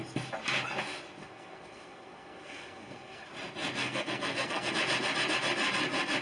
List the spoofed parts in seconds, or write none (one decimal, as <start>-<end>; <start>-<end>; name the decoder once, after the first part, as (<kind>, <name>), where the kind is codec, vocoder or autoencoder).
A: 1.2-3.3 (codec, SNAC); 3.8-4.7